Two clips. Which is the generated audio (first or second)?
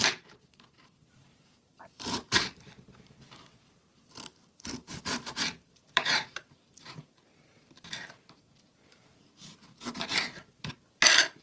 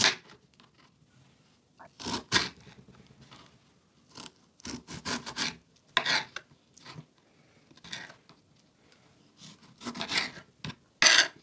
first